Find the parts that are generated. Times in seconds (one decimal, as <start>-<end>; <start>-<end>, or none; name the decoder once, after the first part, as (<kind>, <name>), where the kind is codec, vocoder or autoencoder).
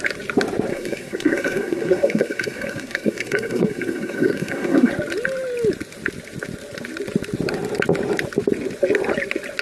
0.7-4.9 (codec, SNAC)